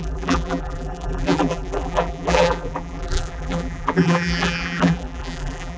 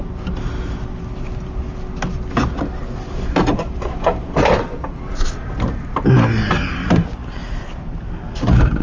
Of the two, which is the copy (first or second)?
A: first